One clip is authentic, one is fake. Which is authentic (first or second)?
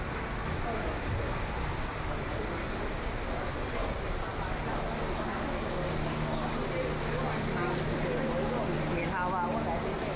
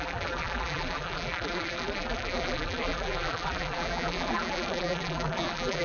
first